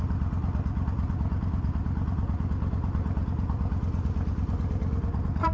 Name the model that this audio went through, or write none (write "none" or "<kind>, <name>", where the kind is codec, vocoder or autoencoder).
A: none